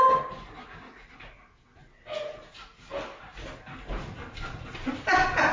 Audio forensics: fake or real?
real